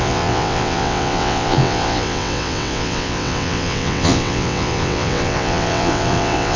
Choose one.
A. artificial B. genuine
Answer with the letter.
A